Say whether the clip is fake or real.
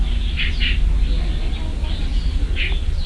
real